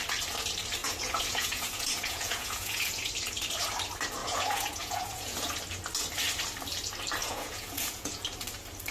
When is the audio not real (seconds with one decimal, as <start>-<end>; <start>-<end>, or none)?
0.8-3.1; 4.2-5.5; 7.2-8.2